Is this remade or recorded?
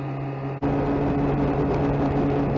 recorded